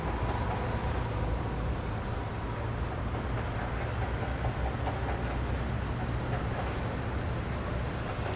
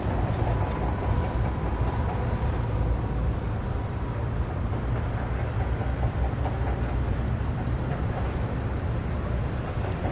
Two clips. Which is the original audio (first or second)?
first